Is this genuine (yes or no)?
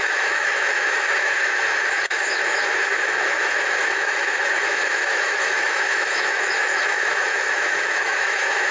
no